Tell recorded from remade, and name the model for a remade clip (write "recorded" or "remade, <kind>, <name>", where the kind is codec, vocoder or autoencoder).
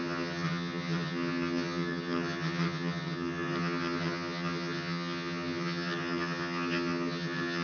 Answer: remade, vocoder, HiFi-GAN